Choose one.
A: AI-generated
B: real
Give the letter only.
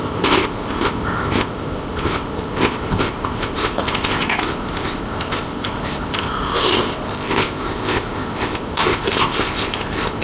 A